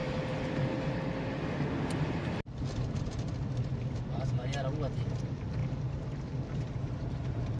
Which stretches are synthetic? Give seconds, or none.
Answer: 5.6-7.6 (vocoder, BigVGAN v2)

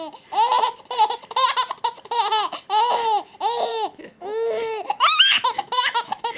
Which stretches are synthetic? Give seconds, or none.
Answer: 3.7-6.4 (autoencoder, DAC-VAE)

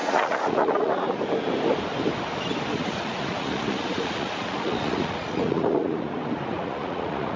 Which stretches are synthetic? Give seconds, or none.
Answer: 0.0-1.2 (vocoder, Vocos); 2.7-7.4

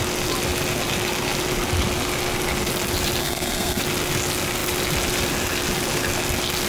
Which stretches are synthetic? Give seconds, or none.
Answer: 3.2-3.8 (codec, SNAC)

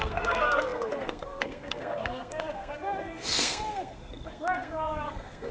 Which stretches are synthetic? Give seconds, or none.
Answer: 0.0-5.5 (codec, SNAC)

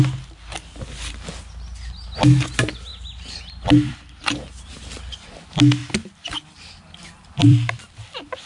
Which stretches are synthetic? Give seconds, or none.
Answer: 2.9-4.7 (vocoder, BigVGAN v2); 5.8-8.0

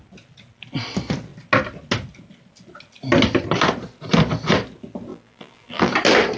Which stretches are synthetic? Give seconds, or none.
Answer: 5.1-5.9 (vocoder, BigVGAN v2)

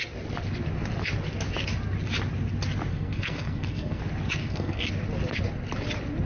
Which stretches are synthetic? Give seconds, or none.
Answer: 2.9-4.0 (codec, SNAC); 4.4-4.9